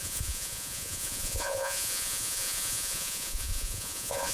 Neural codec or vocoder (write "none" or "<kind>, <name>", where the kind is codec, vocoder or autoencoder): vocoder, Vocos